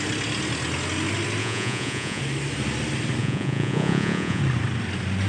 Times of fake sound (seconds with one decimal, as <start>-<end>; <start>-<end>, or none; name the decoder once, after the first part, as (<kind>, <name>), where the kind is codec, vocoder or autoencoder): 1.4-2.2 (vocoder, Vocos); 3.2-4.4